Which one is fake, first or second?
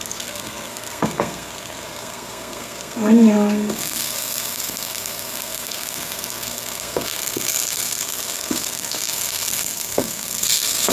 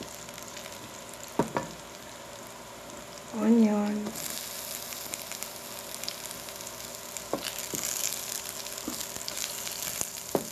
first